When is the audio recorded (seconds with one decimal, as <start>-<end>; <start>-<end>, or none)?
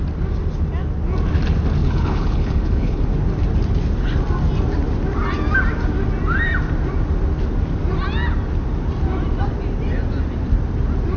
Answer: 0.0-1.8; 3.0-11.2